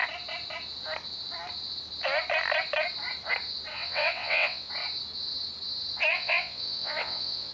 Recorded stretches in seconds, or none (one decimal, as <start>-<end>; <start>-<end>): 0.0-3.7; 4.7-6.1